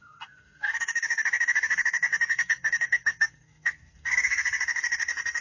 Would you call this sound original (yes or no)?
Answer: no